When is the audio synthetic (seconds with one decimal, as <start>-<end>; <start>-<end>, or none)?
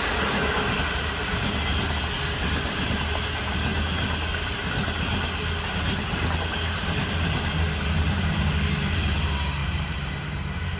9.6-10.8